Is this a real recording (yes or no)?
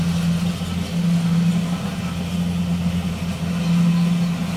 yes